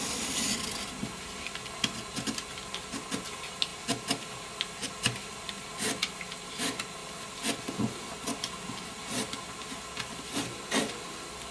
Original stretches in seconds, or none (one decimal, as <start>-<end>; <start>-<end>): 0.0-11.5